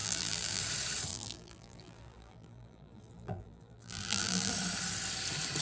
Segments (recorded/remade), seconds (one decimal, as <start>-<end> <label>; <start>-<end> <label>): 0.0-0.6 remade; 0.6-1.1 recorded; 1.1-4.5 remade; 4.5-5.6 recorded